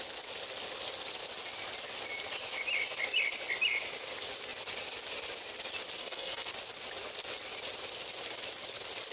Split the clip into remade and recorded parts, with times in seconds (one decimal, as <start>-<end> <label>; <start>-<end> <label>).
0.0-6.0 recorded; 6.0-6.5 remade; 6.5-9.1 recorded